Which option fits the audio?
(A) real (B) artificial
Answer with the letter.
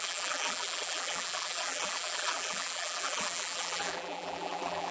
B